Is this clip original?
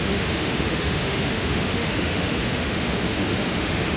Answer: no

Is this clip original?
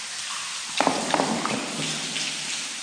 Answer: yes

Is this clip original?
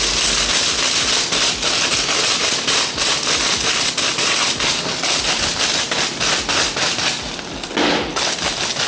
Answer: yes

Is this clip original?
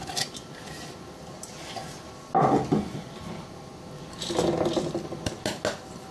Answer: yes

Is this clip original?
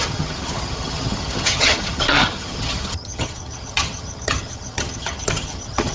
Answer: no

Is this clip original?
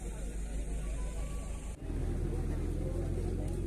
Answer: yes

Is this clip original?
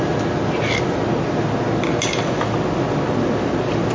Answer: yes